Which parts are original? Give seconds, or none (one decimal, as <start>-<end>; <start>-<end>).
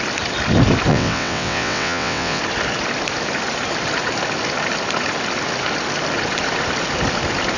0.0-0.9; 2.4-7.6